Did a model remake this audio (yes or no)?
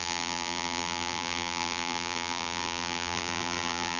yes